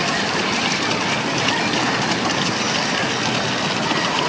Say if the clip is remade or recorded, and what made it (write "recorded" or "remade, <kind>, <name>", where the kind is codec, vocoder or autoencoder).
recorded